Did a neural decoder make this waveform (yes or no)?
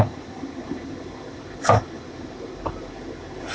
no